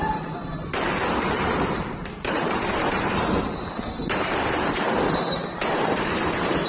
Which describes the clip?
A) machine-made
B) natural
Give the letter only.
A